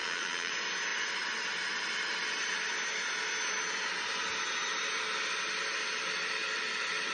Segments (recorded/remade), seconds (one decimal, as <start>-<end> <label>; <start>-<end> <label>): 0.0-0.5 remade; 0.5-7.1 recorded